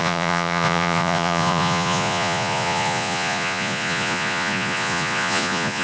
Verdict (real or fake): fake